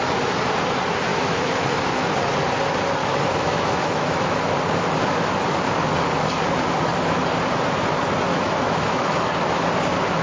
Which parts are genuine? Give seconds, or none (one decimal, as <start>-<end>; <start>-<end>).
0.0-1.1; 2.1-3.0; 4.4-8.3; 9.3-10.2